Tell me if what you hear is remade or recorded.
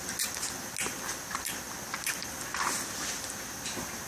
recorded